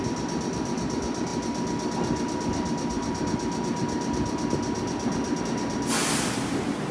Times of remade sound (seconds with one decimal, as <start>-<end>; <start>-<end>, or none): none